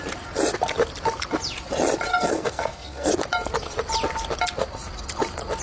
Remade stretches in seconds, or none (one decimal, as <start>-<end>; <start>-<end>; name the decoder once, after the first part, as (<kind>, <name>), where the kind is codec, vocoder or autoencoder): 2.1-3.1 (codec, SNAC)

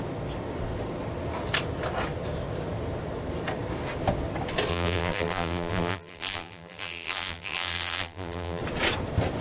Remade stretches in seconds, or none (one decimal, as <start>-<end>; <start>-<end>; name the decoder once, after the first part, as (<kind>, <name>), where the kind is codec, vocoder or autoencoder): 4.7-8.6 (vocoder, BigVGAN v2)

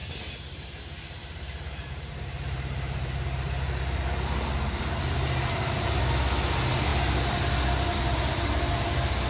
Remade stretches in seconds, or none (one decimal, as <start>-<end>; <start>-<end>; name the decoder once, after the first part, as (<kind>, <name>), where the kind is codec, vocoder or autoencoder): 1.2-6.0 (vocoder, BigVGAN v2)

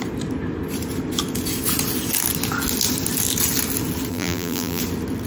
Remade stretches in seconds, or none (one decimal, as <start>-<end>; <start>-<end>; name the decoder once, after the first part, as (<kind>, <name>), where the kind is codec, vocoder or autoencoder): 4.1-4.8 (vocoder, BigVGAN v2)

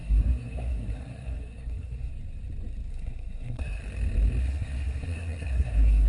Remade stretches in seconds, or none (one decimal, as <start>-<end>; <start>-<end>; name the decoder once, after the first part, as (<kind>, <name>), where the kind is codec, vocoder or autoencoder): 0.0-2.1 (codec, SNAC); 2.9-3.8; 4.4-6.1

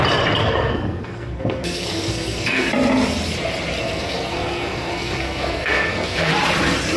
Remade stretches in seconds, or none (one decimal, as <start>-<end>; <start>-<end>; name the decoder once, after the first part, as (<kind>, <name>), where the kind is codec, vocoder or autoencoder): 0.4-2.7 (codec, SNAC); 3.8-6.3

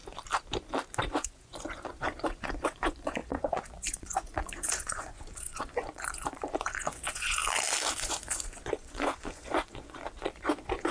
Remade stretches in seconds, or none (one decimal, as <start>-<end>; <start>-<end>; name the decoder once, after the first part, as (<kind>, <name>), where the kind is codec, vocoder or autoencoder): 1.1-7.4 (vocoder, Vocos); 7.9-10.9

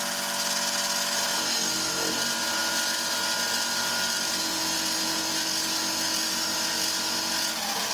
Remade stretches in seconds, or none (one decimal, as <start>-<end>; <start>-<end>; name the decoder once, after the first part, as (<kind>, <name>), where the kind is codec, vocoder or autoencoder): none